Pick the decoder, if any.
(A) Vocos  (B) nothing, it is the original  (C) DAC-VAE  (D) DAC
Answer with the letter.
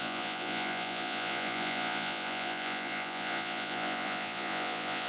A